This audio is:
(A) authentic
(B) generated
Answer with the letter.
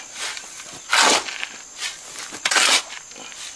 A